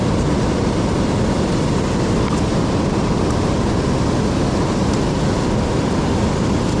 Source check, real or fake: real